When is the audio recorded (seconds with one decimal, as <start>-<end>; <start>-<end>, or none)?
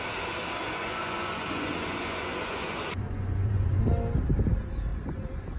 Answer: 0.0-0.6; 3.8-4.9